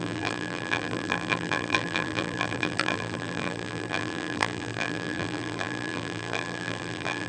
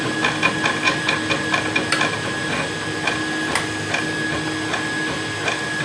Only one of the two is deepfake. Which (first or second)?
first